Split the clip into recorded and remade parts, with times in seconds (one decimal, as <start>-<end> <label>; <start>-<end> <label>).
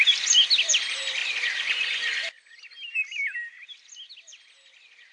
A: 0.0-5.1 recorded